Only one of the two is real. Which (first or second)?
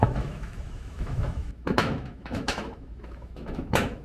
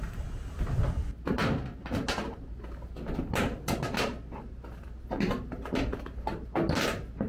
second